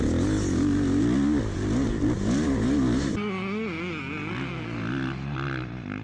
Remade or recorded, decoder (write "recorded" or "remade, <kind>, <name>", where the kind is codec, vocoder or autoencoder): recorded